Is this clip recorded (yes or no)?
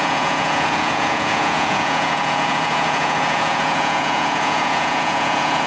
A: no